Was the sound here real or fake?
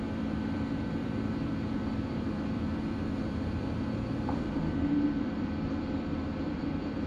fake